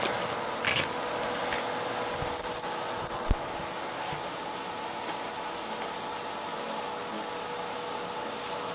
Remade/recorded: recorded